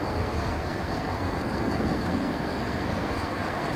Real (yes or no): no